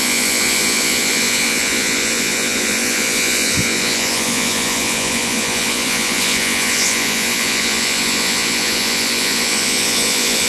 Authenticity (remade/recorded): remade